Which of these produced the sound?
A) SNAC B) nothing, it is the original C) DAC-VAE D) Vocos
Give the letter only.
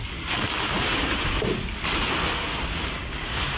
B